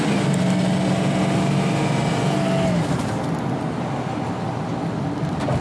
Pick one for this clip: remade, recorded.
recorded